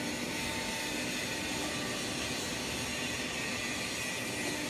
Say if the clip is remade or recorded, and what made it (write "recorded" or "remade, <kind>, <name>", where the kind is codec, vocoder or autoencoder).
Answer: recorded